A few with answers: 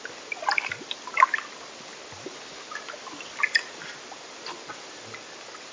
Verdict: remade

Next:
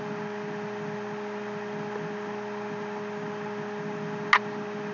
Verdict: recorded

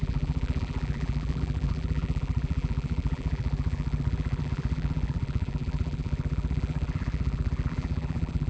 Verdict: remade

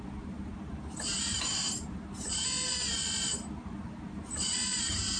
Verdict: remade